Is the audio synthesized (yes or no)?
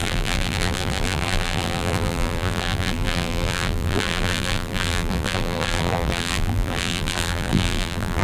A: yes